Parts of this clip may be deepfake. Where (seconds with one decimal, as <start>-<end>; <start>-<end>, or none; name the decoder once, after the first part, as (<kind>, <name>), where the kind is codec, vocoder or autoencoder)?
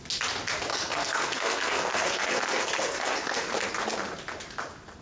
0.7-3.5 (codec, SNAC)